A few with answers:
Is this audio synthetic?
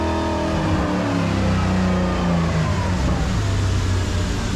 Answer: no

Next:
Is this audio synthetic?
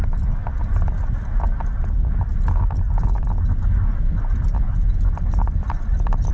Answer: no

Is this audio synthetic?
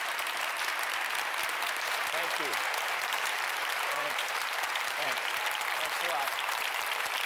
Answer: yes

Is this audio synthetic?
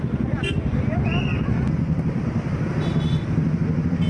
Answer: no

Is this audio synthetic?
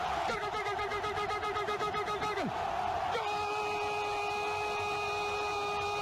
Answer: no